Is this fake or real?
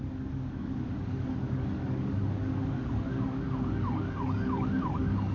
fake